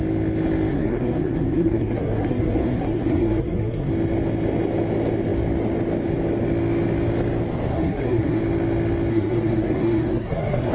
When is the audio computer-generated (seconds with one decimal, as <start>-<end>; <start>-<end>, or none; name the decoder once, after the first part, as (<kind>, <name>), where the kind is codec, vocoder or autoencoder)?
0.7-3.9 (codec, SNAC); 7.7-8.4; 9.1-10.7